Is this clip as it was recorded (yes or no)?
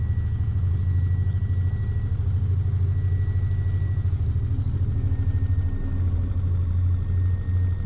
yes